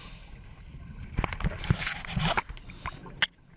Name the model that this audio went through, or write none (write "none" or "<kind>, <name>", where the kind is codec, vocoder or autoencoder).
none